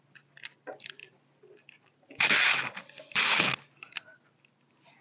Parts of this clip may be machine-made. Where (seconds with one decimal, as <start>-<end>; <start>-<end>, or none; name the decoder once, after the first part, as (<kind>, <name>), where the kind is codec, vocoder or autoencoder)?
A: none